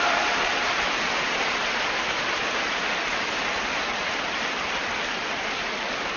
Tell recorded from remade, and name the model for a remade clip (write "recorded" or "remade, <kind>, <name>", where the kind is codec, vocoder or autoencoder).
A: recorded